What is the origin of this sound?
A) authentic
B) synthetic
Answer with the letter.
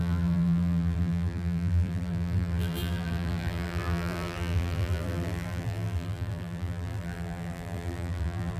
B